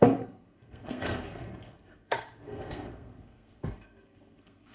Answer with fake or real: fake